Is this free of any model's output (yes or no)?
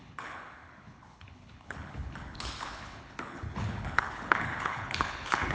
no